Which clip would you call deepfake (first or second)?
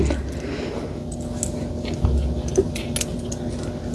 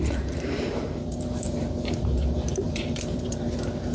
second